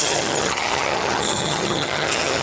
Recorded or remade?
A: remade